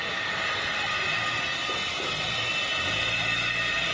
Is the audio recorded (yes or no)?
yes